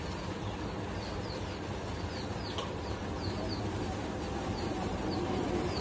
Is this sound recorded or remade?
recorded